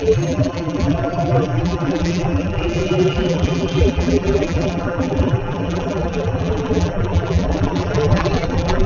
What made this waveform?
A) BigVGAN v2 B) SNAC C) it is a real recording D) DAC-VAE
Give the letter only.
A